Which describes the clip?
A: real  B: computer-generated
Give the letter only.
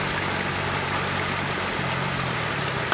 A